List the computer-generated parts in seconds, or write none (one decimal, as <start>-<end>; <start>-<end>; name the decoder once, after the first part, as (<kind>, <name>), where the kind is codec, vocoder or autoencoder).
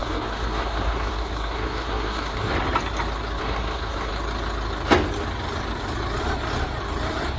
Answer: 0.0-2.5 (codec, SNAC); 3.4-4.1